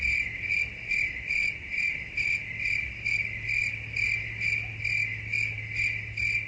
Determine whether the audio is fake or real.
real